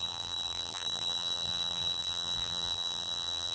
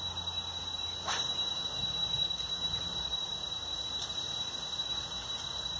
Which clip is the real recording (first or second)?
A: second